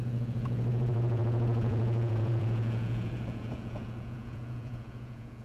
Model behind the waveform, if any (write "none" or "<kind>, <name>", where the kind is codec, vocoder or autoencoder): vocoder, Vocos